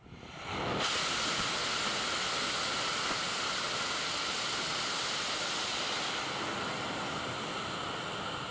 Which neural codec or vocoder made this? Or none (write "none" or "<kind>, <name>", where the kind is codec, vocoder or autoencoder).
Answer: none